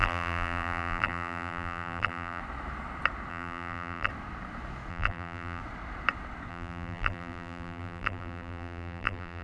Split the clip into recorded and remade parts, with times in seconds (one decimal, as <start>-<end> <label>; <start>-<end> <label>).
0.0-2.4 remade; 2.4-3.3 recorded; 3.3-4.1 remade; 4.1-4.9 recorded; 4.9-5.6 remade; 5.6-6.5 recorded; 6.5-9.4 remade